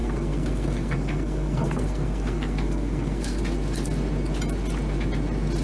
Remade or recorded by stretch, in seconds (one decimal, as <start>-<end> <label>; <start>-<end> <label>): 0.0-3.4 remade; 3.4-5.6 recorded